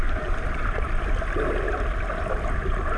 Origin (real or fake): real